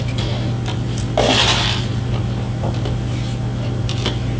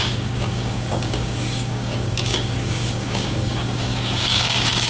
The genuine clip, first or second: first